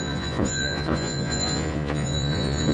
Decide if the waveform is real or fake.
fake